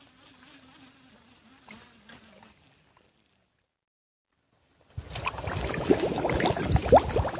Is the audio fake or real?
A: real